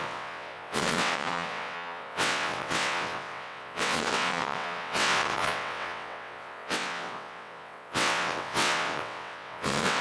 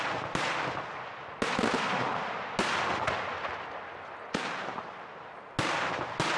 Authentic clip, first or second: second